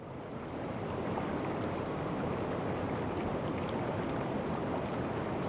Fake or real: real